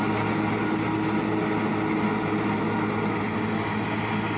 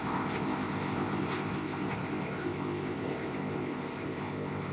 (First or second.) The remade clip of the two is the second